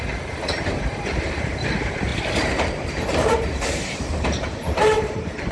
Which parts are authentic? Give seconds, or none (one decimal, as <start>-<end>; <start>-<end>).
none